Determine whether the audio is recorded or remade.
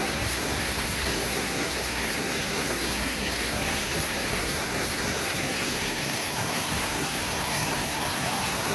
remade